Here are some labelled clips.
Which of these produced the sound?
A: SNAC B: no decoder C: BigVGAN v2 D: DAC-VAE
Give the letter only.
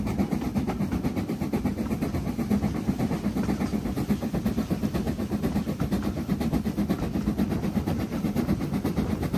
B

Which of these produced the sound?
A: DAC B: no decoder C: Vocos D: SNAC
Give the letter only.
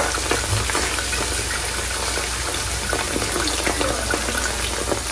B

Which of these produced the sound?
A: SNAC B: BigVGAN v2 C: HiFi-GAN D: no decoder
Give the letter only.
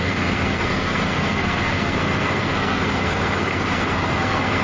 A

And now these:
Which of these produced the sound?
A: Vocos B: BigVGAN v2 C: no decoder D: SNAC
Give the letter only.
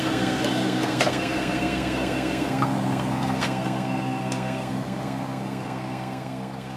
D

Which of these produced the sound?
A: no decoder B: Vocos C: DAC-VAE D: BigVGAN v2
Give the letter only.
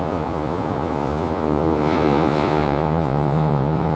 B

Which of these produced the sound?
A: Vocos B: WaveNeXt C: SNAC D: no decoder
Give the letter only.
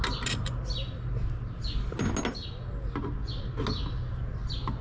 D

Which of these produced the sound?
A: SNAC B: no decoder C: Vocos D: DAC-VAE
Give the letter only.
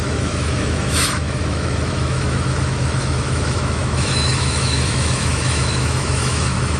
D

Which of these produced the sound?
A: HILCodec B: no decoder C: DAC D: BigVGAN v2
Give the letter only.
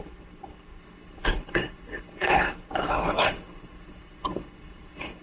A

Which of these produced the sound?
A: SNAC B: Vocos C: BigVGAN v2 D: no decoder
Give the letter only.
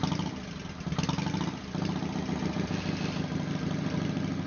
D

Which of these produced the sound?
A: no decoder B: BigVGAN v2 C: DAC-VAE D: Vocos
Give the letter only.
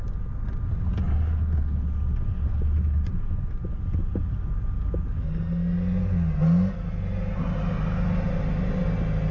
A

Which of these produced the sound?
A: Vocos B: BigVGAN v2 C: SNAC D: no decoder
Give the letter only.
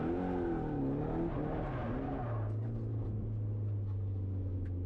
D